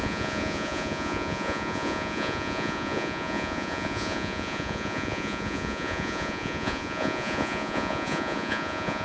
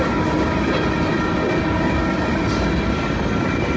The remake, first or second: first